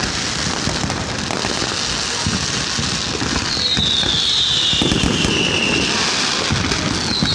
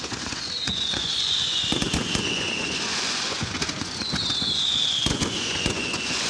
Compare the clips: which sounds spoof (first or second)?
second